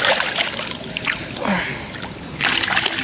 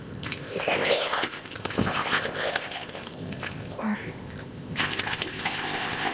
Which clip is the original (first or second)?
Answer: first